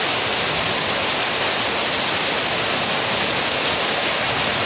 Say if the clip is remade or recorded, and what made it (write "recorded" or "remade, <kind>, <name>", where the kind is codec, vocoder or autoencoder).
remade, vocoder, BigVGAN v2